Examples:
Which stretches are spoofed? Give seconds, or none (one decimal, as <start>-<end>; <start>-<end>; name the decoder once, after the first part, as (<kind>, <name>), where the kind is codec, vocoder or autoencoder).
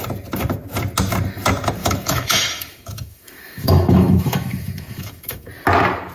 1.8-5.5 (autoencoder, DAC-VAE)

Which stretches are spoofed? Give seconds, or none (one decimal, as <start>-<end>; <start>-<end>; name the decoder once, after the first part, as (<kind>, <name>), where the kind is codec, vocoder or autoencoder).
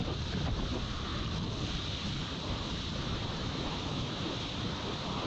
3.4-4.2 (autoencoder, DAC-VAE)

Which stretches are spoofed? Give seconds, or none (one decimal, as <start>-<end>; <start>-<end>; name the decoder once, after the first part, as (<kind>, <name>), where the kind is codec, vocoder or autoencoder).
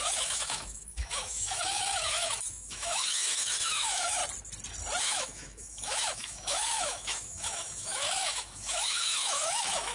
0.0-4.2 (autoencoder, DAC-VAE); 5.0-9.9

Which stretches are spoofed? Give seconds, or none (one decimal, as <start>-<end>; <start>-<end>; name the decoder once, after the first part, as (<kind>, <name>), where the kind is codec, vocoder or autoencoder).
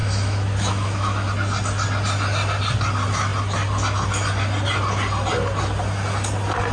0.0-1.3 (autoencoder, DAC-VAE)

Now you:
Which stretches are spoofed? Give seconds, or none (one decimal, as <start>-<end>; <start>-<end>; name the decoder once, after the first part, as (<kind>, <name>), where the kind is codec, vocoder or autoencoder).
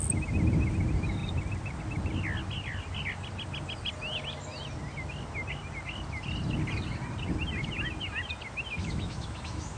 8.8-9.8 (autoencoder, DAC-VAE)